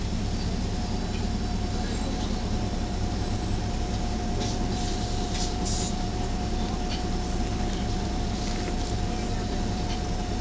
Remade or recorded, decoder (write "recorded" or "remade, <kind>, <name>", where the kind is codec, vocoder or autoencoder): recorded